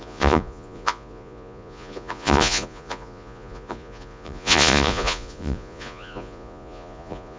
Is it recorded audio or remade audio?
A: remade